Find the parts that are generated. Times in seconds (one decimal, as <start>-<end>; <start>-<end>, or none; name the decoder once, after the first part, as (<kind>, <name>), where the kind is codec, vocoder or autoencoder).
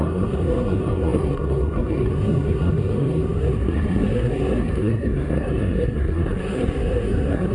0.0-7.5 (codec, SNAC)